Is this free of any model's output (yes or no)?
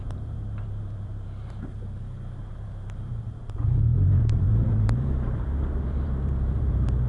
no